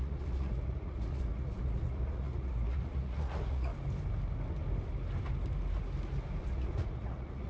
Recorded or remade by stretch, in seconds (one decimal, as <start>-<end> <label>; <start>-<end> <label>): 0.0-3.7 remade; 3.7-6.4 recorded; 6.4-7.5 remade